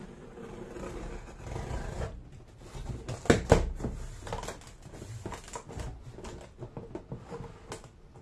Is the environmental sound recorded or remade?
recorded